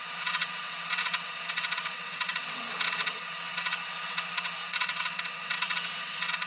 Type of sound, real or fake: fake